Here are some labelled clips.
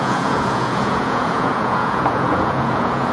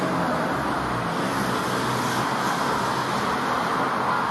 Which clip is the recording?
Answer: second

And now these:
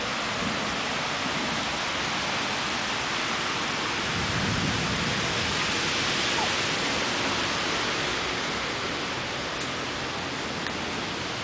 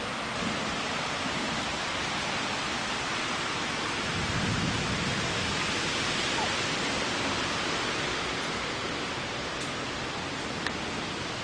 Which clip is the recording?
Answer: first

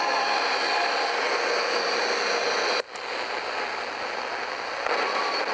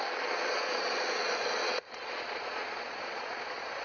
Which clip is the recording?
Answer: first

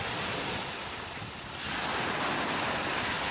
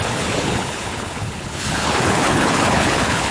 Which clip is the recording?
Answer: first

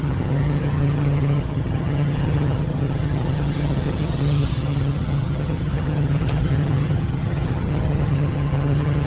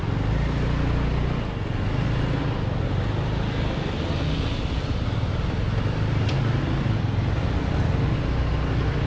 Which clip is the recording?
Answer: second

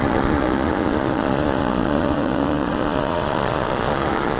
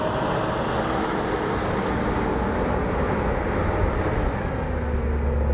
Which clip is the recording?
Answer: second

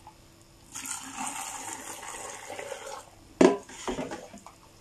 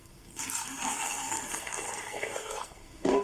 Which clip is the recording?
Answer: first